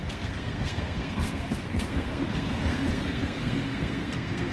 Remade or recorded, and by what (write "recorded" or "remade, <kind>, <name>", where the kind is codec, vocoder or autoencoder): remade, codec, SNAC